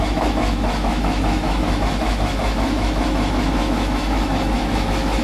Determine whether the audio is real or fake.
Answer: fake